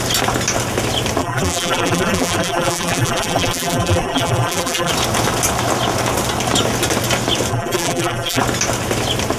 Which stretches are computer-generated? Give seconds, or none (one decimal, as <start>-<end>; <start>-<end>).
1.2-4.9; 7.5-8.4

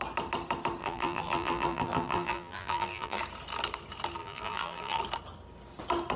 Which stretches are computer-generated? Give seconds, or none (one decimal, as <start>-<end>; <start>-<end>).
0.8-3.2; 4.2-5.0